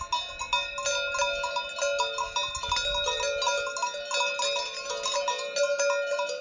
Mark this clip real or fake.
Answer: real